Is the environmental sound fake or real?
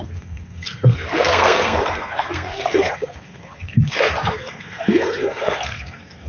fake